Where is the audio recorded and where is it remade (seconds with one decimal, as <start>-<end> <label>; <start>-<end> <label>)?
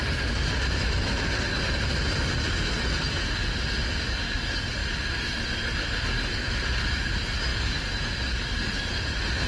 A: 0.0-9.5 recorded